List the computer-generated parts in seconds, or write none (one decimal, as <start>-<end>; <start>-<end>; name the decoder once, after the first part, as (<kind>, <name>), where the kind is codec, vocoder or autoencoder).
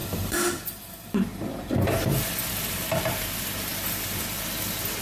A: 0.0-3.0 (vocoder, BigVGAN v2); 3.7-4.4